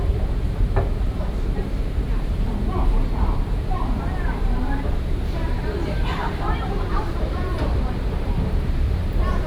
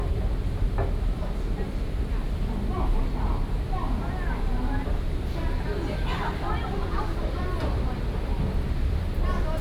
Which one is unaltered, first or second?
second